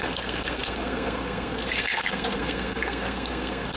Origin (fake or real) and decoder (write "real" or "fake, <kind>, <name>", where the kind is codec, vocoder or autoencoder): fake, codec, SNAC